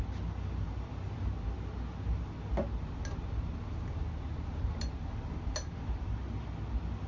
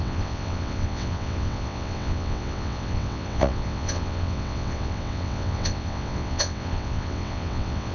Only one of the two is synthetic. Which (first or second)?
second